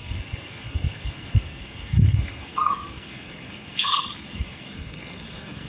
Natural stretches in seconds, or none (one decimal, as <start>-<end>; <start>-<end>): none